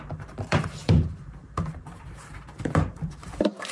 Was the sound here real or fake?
fake